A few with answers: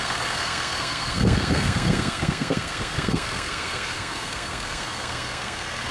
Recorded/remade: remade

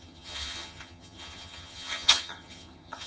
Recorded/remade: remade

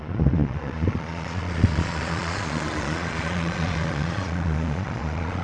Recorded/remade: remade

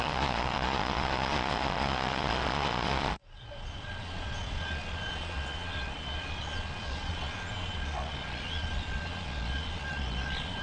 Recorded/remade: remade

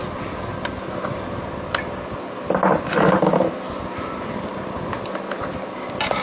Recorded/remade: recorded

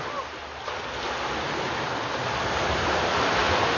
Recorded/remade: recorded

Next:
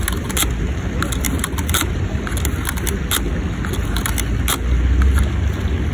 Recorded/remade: recorded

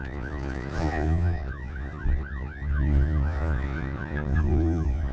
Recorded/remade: remade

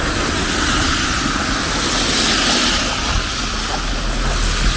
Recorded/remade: recorded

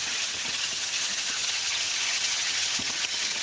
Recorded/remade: remade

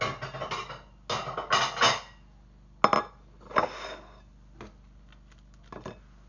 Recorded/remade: recorded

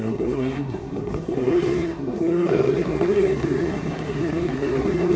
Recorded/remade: remade